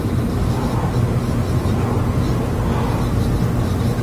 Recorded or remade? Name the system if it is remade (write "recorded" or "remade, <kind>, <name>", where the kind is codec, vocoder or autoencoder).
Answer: recorded